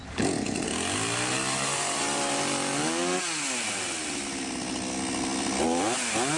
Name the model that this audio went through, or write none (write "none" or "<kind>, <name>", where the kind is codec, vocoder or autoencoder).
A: none